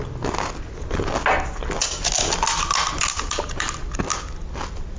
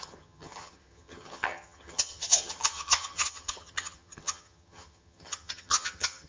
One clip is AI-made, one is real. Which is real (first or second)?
first